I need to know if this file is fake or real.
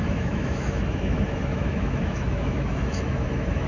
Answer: fake